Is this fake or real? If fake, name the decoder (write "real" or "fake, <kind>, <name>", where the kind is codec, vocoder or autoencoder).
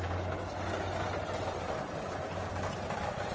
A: real